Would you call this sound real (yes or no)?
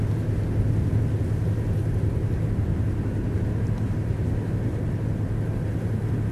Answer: yes